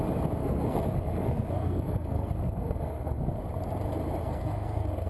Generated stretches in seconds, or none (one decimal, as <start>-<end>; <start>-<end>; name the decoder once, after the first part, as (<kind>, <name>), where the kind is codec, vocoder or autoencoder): 0.4-3.4 (codec, SNAC); 4.2-5.1